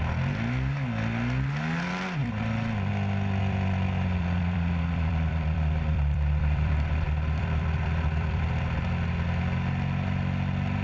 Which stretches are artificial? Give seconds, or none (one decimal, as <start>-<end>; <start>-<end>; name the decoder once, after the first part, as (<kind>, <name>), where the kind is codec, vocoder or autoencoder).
2.2-2.9 (vocoder, BigVGAN v2); 3.4-8.5